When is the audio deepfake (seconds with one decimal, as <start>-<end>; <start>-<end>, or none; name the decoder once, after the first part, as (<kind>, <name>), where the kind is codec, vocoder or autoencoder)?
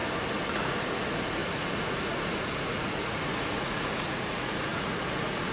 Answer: 0.5-5.5 (vocoder, Vocos)